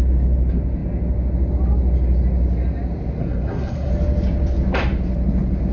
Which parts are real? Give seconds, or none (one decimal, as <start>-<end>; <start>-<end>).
0.0-3.2; 3.9-5.7